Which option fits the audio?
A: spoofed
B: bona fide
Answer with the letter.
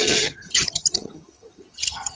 A